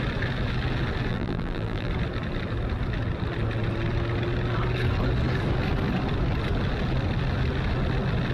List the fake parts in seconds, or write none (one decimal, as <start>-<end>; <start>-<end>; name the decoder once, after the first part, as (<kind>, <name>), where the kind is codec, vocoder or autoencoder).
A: 1.1-1.9 (vocoder, BigVGAN v2)